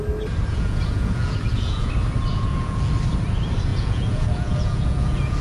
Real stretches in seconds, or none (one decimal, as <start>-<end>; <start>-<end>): 0.0-0.5; 1.9-2.3; 2.8-3.7